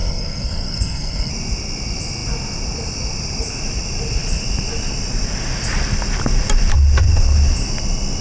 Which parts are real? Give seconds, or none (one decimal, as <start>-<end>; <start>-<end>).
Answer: 1.3-8.2